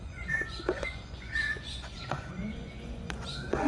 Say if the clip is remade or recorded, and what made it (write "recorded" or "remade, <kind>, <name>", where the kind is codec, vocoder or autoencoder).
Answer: remade, vocoder, Vocos